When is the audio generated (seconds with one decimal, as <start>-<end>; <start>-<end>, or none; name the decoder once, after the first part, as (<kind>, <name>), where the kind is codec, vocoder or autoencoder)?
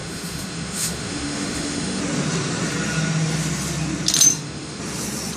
0.0-2.0 (autoencoder, DAC-VAE); 4.3-4.8